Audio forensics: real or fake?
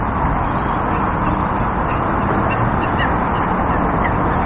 real